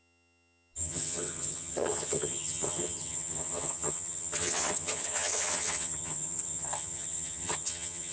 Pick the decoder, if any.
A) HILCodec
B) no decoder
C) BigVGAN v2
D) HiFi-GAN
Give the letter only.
D